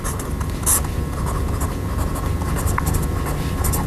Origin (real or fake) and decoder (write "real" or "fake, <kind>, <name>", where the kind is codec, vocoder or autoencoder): real